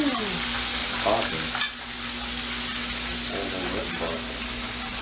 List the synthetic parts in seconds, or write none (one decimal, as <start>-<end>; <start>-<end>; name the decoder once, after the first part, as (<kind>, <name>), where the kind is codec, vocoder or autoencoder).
none